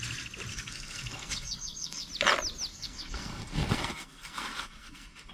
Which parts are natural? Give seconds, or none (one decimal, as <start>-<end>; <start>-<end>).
0.0-0.5; 2.1-2.7